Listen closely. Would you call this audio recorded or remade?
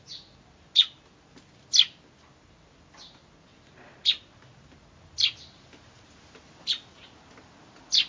recorded